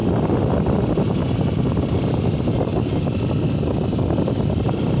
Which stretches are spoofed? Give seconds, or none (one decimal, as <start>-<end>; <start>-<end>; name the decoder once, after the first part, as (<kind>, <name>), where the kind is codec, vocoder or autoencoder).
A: 0.0-2.7 (vocoder, BigVGAN v2); 4.2-5.0